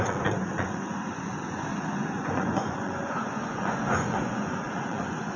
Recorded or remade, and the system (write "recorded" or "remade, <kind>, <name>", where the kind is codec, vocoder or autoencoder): remade, vocoder, Vocos